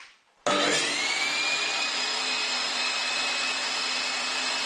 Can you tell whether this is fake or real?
fake